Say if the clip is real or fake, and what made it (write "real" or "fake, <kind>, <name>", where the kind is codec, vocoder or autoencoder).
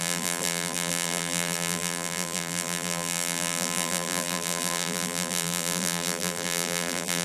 fake, vocoder, BigVGAN v2